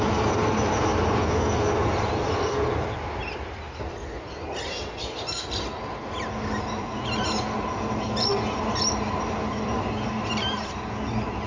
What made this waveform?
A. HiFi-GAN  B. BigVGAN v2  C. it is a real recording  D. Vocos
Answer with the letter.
C